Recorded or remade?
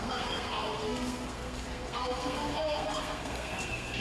remade